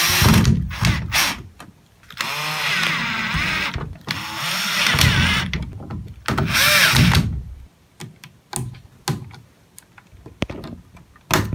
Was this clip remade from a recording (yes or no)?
no